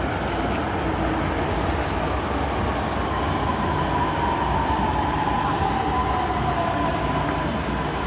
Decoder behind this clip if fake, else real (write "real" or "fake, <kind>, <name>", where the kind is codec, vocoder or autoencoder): real